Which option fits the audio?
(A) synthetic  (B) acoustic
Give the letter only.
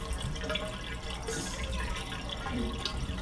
B